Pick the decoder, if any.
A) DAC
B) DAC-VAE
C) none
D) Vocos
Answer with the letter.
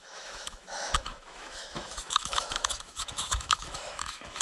B